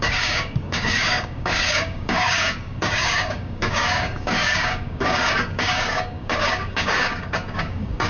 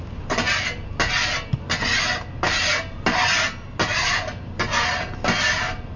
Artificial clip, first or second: first